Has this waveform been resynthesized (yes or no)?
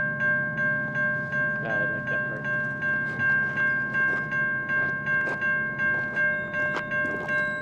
no